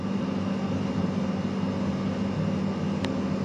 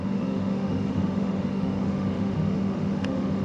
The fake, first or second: second